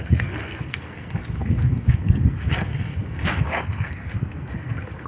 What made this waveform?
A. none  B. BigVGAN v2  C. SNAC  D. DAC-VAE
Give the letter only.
C